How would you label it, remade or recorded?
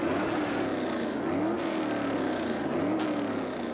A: recorded